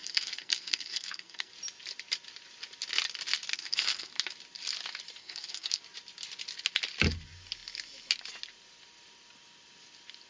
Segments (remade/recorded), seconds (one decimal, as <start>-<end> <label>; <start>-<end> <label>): 0.0-1.5 remade; 1.5-3.5 recorded; 3.5-4.1 remade; 4.1-5.2 recorded; 5.2-5.8 remade; 5.8-10.3 recorded